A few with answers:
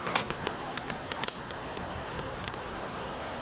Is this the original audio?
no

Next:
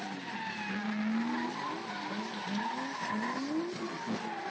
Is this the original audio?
yes